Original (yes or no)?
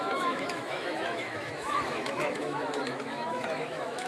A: no